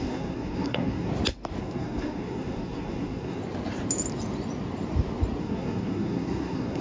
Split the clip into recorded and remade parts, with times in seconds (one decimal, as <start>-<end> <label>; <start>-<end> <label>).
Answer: 0.0-1.1 remade; 1.1-1.6 recorded; 1.6-3.4 remade; 3.4-5.4 recorded; 5.4-6.8 remade